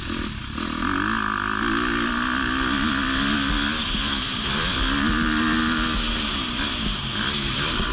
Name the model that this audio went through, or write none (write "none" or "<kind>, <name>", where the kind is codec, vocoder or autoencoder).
none